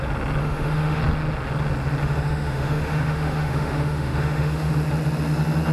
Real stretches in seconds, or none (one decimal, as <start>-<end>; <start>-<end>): 0.0-0.4; 1.0-2.0; 4.7-5.7